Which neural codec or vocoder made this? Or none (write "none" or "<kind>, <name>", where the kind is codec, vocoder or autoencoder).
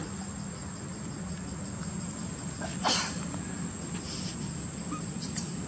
none